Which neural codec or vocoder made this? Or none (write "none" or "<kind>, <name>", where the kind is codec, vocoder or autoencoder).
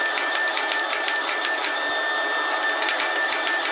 none